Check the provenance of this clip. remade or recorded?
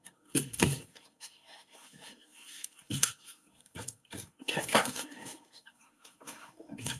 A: remade